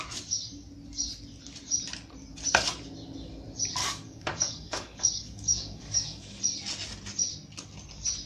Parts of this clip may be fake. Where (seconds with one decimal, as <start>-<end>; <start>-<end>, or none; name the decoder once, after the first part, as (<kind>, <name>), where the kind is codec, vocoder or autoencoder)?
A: 3.8-6.4 (codec, DAC)